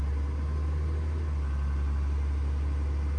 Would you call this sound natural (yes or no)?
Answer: yes